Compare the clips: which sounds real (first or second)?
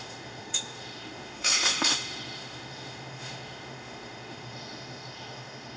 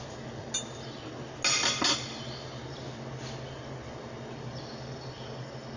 second